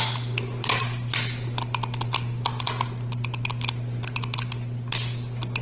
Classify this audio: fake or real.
real